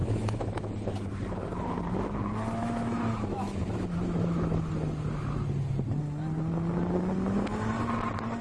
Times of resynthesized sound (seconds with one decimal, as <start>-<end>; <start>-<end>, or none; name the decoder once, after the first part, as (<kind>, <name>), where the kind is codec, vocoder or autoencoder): 0.0-0.6 (autoencoder, DAC-VAE); 2.6-4.7